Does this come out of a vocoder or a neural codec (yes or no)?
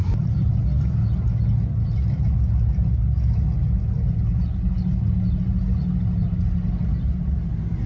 no